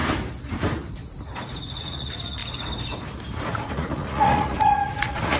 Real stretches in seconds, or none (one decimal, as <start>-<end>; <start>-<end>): 0.0-1.8; 2.4-3.5